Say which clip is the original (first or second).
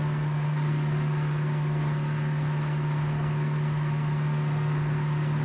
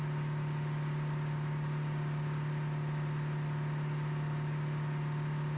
second